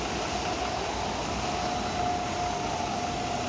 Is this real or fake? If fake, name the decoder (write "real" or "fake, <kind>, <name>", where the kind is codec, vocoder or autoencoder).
real